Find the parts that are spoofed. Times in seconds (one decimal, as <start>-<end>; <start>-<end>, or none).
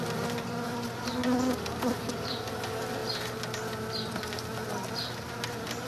none